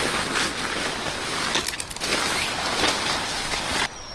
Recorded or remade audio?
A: recorded